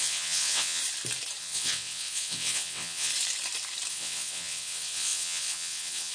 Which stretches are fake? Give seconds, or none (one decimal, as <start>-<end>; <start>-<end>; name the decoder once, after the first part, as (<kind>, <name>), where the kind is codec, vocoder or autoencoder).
0.0-0.8 (vocoder, WaveNeXt); 1.4-3.1; 3.9-6.1

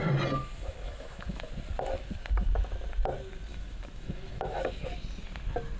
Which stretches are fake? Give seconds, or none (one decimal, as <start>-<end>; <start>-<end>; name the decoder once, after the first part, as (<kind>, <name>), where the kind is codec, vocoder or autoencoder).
0.4-1.5 (autoencoder, DAC-VAE); 3.5-4.6

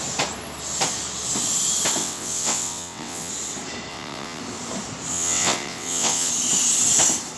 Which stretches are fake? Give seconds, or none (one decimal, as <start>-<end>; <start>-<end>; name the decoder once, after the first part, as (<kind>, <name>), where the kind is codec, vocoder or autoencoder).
2.0-3.3 (vocoder, WaveNeXt); 3.9-4.4; 5.1-6.3

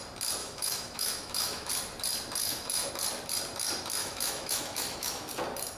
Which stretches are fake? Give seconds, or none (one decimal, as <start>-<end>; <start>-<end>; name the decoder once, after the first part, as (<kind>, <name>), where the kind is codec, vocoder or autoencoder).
0.4-1.7 (autoencoder, DAC-VAE); 2.4-2.9; 4.0-5.3

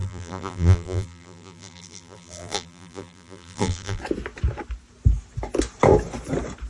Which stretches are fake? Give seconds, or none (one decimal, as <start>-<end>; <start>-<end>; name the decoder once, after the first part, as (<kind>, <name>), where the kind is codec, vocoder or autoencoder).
0.0-4.0 (vocoder, BigVGAN v2)

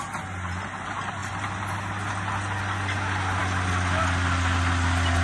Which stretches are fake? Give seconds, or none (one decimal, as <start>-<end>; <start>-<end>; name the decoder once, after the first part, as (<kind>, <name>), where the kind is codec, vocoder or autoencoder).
none

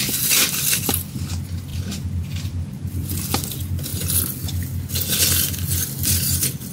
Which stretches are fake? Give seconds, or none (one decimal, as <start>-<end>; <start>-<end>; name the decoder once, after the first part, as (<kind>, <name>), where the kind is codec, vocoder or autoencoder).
1.7-3.1 (vocoder, BigVGAN v2)

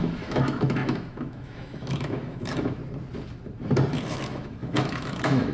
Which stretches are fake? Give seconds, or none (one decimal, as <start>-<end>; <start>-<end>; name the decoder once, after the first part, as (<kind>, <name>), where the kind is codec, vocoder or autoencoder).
0.0-2.8 (autoencoder, DAC-VAE); 3.9-5.5